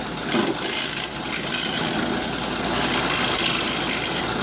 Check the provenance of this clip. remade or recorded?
recorded